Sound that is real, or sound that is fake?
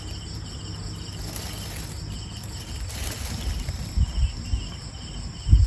real